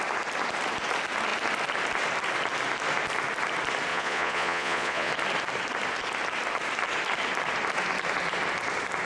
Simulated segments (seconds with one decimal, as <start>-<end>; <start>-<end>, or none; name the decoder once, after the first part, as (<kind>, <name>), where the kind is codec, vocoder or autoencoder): 3.9-5.1 (vocoder, Vocos)